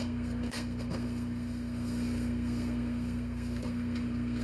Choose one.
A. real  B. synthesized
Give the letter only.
B